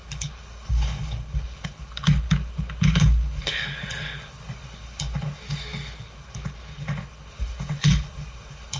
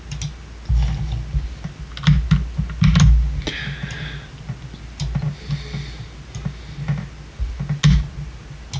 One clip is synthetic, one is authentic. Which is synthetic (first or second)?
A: first